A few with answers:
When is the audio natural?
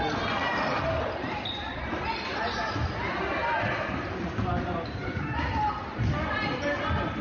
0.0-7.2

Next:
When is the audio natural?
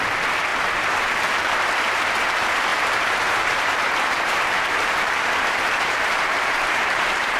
0.0-2.7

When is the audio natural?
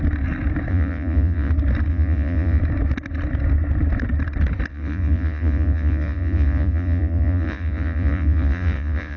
0.0-0.7; 1.5-1.9; 2.6-4.7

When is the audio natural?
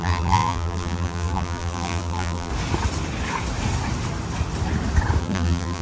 2.5-5.2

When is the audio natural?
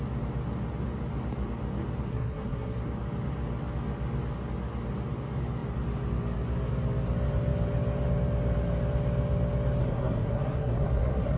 0.0-2.1; 2.8-9.8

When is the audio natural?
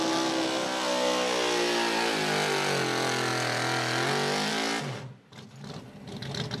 0.0-6.6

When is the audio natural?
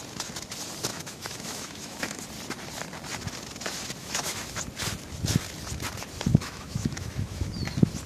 0.0-0.9; 2.2-4.0; 4.6-6.3; 7.5-8.1